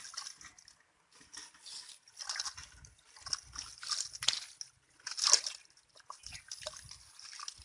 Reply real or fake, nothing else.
real